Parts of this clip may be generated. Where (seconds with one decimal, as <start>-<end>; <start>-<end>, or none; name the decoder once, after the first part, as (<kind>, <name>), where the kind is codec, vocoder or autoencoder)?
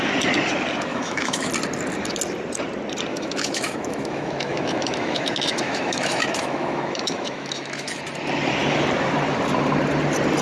0.9-1.5 (autoencoder, DAC-VAE); 3.1-8.0